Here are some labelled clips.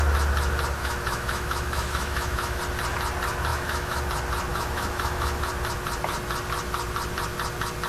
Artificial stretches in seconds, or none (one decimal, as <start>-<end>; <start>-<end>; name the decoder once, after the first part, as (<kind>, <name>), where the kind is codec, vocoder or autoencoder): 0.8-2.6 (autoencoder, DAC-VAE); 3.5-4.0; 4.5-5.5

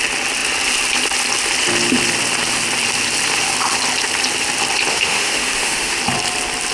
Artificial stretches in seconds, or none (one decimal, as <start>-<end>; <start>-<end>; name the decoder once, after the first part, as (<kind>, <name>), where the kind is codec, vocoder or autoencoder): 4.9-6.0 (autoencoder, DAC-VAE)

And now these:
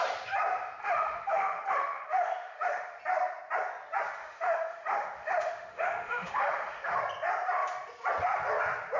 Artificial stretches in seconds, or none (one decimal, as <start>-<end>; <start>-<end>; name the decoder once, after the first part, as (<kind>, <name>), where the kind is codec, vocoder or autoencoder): 0.8-3.0 (autoencoder, DAC-VAE); 4.2-7.0